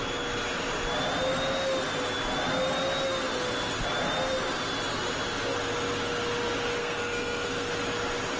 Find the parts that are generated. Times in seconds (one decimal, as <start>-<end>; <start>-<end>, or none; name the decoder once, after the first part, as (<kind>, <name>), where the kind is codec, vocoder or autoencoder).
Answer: 6.8-7.7 (codec, SNAC)